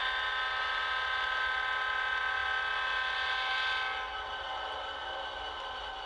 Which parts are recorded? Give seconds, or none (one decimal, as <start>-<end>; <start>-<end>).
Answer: 0.0-6.1